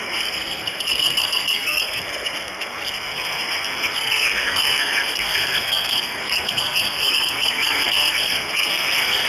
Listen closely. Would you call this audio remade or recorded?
remade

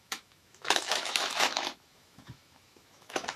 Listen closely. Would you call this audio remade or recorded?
remade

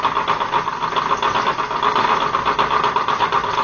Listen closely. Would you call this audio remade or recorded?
recorded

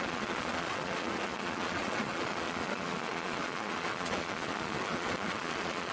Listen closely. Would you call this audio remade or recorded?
remade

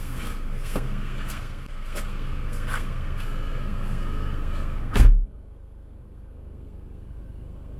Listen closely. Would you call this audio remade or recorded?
remade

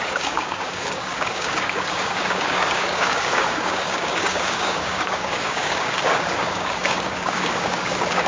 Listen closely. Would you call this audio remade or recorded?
remade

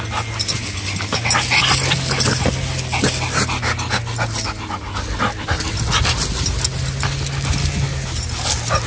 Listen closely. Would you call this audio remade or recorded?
recorded